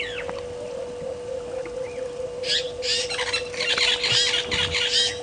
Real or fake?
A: real